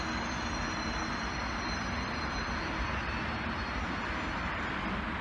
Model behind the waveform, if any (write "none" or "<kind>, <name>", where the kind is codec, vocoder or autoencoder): none